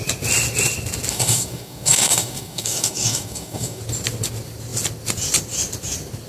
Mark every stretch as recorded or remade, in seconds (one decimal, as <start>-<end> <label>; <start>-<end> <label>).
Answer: 0.0-1.1 recorded; 1.1-3.8 remade; 3.8-6.3 recorded